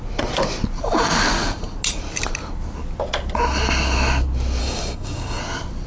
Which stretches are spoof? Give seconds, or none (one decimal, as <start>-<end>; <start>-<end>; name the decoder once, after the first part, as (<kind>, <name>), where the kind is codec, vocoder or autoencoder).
4.6-5.4 (codec, DAC)